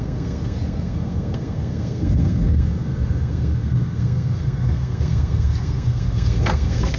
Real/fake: fake